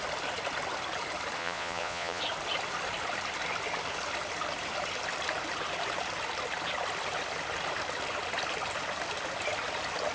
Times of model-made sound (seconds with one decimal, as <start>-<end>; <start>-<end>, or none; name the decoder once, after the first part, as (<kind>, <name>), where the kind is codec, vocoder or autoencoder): 1.4-2.2 (vocoder, Vocos)